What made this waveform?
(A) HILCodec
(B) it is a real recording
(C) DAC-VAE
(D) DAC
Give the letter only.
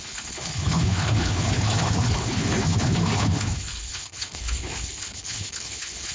A